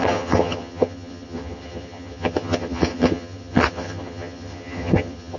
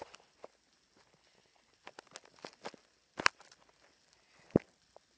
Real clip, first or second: second